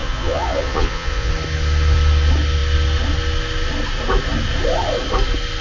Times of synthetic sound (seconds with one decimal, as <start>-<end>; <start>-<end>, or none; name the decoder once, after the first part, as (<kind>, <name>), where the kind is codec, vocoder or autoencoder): 0.0-1.3 (vocoder, Vocos)